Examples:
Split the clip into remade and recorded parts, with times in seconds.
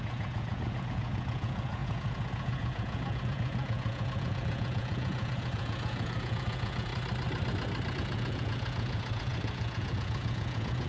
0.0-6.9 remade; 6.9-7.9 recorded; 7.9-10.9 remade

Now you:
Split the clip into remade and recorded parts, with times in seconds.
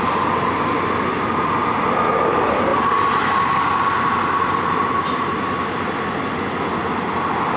0.0-7.6 recorded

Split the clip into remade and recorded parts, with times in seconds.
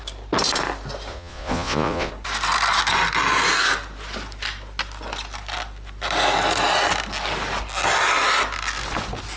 0.0-1.1 recorded; 1.1-2.1 remade; 2.1-9.4 recorded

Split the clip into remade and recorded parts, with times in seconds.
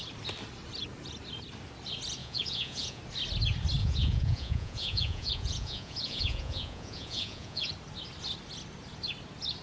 0.0-2.2 recorded; 2.2-3.0 remade; 3.0-3.8 recorded; 3.8-7.7 remade; 7.7-9.6 recorded